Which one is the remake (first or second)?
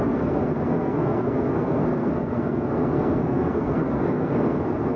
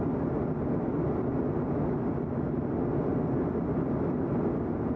first